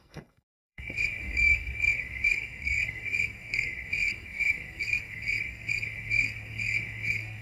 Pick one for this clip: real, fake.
fake